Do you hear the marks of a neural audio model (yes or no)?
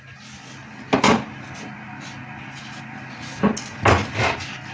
no